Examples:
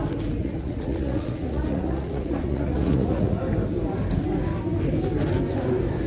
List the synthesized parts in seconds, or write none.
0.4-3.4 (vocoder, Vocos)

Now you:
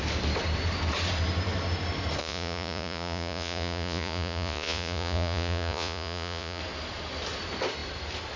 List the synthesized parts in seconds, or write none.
2.2-6.6 (vocoder, Vocos)

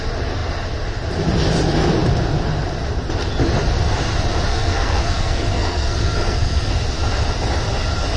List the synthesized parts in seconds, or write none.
4.5-6.7 (codec, SNAC)

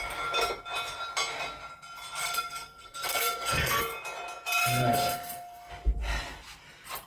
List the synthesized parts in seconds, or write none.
2.2-3.8 (codec, SNAC); 4.6-5.7

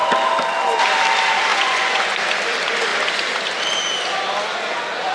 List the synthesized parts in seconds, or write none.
1.5-2.2 (vocoder, Vocos)

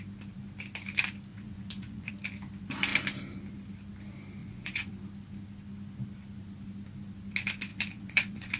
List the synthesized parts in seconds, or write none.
1.3-2.1 (vocoder, Vocos); 4.4-4.9; 7.7-8.6